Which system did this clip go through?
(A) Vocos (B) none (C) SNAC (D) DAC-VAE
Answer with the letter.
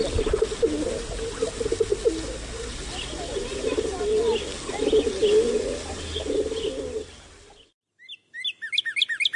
B